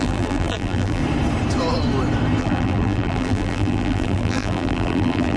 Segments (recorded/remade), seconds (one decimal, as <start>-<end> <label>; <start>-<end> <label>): 0.0-1.0 remade; 1.0-2.4 recorded; 2.4-5.4 remade